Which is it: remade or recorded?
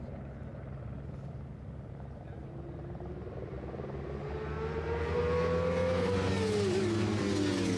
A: recorded